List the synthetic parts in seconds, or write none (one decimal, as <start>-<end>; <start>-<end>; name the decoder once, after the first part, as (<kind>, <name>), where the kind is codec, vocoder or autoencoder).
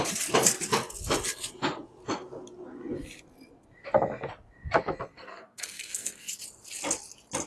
5.1-6.4 (codec, SNAC)